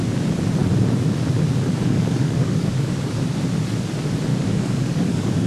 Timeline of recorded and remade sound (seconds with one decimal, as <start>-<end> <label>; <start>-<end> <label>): 0.0-1.8 recorded; 1.8-3.1 remade; 3.1-4.3 recorded; 4.3-5.5 remade